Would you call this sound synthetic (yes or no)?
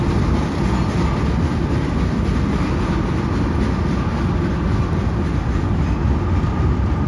no